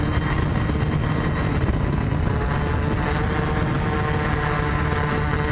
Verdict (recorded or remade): recorded